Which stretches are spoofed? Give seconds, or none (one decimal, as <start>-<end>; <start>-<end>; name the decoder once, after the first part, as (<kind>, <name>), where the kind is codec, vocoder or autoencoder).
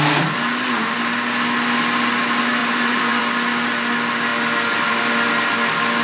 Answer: 2.6-3.2 (vocoder, BigVGAN v2)